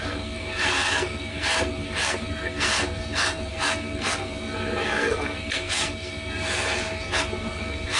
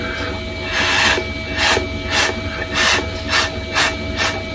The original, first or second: second